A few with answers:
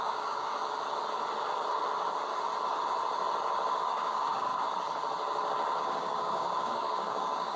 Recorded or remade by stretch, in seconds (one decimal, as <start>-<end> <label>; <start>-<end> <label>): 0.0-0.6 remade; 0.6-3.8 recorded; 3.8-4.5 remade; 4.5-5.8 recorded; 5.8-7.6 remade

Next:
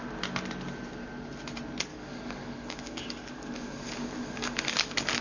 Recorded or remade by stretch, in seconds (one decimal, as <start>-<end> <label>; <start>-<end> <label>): 0.0-1.9 recorded; 1.9-5.2 remade

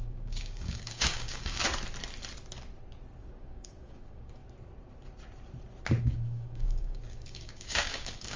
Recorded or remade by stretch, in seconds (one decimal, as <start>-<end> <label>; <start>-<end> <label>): 0.0-1.6 remade; 1.6-3.2 recorded; 3.2-4.4 remade; 4.4-6.0 recorded; 6.0-8.4 remade